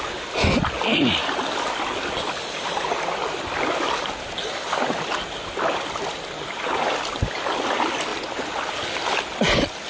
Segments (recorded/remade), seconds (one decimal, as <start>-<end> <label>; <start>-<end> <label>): 0.0-9.9 recorded